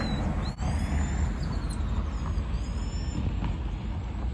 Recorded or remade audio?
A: recorded